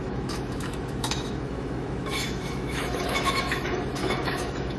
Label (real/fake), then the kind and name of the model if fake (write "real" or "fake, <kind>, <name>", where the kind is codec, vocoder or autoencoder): fake, autoencoder, DAC-VAE